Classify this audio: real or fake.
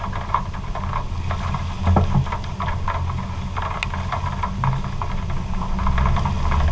real